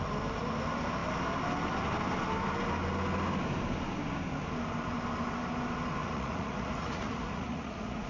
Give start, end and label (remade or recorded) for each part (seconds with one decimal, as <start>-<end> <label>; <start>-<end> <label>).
0.0-6.0 recorded; 6.0-8.1 remade